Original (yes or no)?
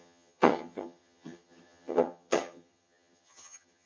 no